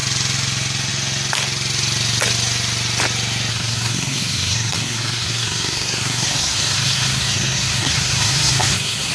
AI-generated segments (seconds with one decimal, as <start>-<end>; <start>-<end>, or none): 3.5-9.1